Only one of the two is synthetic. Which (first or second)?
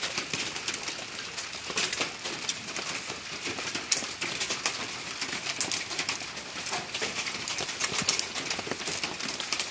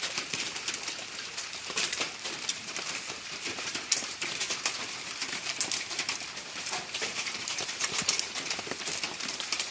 second